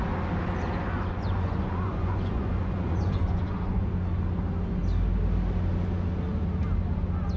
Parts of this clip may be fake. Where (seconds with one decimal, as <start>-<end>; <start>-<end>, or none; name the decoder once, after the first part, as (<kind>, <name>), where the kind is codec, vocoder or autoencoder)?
0.8-3.9 (vocoder, Vocos)